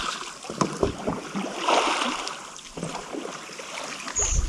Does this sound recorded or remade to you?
recorded